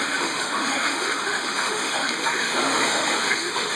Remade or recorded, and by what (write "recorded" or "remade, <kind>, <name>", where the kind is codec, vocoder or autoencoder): remade, autoencoder, DAC-VAE